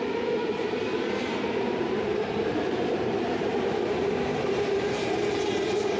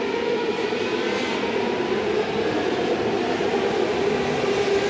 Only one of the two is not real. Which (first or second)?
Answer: first